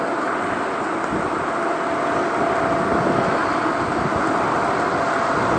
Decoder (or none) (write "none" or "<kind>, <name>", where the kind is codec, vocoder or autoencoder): none